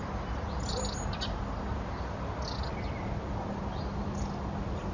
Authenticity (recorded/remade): recorded